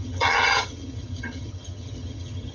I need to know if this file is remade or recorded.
remade